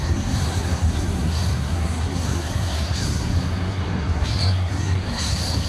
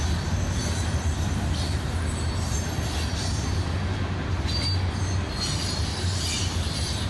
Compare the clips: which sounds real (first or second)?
second